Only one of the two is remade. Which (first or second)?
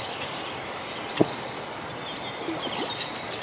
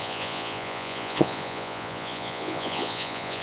second